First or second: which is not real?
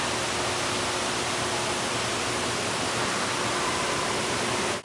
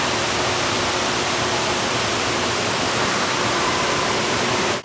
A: second